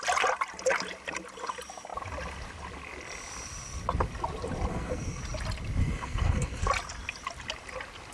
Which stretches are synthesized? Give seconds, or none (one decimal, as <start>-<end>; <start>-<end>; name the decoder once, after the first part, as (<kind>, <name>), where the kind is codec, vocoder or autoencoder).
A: 4.7-5.2 (codec, SNAC); 5.8-6.7